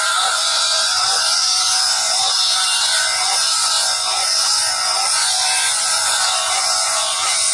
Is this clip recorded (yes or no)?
no